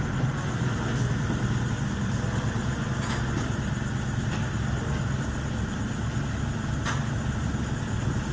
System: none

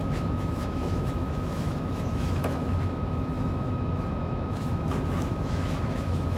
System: autoencoder, DAC-VAE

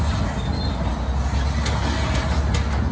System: none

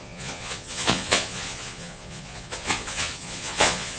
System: vocoder, Vocos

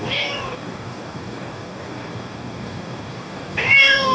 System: codec, DAC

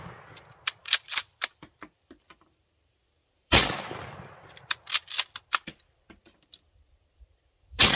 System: vocoder, BigVGAN v2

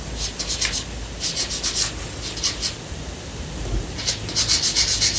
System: none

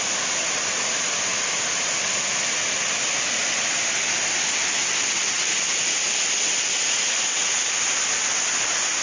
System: none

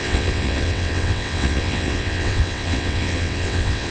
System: vocoder, WaveNeXt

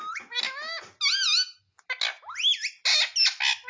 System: none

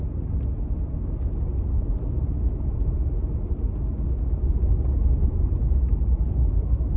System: none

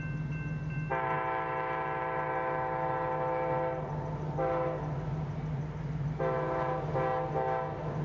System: none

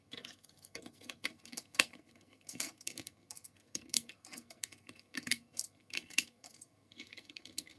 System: codec, SNAC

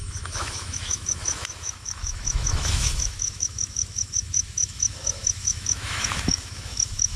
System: autoencoder, DAC-VAE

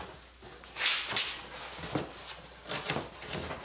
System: none